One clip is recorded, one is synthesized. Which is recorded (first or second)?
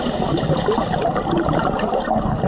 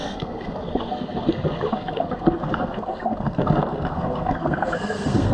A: first